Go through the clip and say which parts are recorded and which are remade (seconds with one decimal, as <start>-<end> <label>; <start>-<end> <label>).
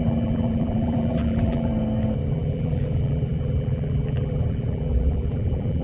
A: 0.0-1.7 remade; 1.7-2.3 recorded; 2.3-5.8 remade